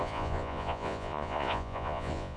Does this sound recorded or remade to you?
remade